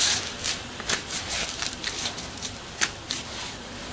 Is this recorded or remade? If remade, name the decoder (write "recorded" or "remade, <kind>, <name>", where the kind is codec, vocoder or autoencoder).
remade, vocoder, BigVGAN v2